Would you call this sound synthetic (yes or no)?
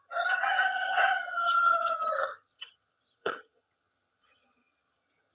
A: yes